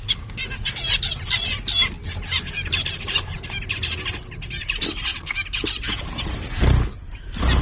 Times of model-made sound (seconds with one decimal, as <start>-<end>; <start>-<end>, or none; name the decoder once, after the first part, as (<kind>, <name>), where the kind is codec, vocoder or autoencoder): 5.1-6.5 (vocoder, BigVGAN v2); 6.9-7.6